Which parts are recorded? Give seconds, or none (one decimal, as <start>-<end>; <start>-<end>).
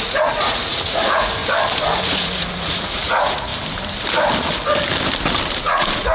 1.4-2.0; 3.5-5.6